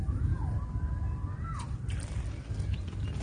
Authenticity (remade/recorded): recorded